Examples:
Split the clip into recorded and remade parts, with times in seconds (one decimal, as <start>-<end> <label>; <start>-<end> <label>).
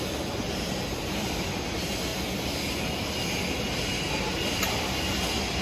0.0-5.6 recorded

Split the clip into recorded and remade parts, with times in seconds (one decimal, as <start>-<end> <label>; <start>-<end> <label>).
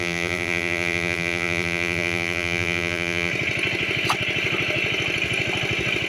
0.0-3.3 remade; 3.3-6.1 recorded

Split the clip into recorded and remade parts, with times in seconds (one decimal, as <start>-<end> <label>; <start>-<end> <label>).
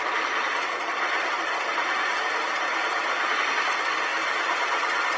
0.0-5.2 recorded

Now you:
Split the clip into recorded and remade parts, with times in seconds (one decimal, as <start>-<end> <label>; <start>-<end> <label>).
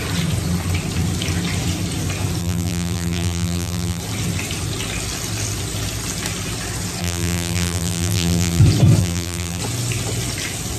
0.0-2.4 recorded; 2.4-4.0 remade; 4.0-7.0 recorded; 7.0-8.6 remade; 8.6-9.0 recorded; 9.0-9.6 remade; 9.6-10.8 recorded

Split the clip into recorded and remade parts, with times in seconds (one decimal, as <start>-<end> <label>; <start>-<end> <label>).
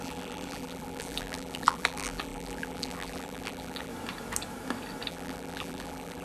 0.0-3.9 remade; 3.9-5.1 recorded; 5.1-6.2 remade